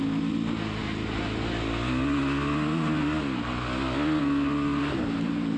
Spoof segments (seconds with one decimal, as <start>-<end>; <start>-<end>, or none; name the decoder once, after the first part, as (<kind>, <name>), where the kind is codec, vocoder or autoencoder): 4.8-5.6 (vocoder, BigVGAN v2)